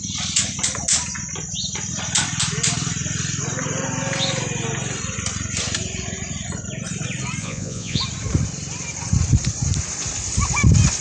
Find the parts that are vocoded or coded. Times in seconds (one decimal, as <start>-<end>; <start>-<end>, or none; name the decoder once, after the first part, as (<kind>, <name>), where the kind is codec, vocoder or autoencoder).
7.4-8.0 (vocoder, Vocos)